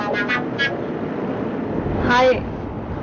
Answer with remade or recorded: recorded